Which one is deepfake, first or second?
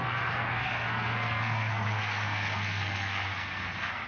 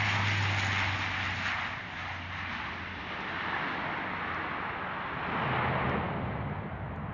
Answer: first